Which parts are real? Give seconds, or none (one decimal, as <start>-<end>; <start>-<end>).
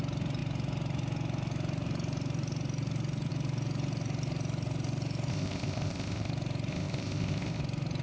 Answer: 0.0-5.3; 6.3-6.7; 7.6-8.0